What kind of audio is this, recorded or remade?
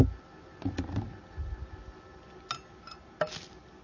recorded